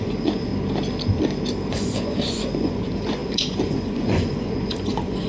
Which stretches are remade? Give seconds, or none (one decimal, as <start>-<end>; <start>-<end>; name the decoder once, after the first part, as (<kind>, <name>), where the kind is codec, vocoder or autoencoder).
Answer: 0.0-0.5 (vocoder, Vocos); 1.7-5.3